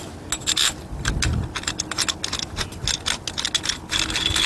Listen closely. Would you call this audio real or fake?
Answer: real